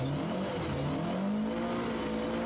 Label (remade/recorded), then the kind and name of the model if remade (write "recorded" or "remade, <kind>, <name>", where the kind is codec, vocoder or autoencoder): recorded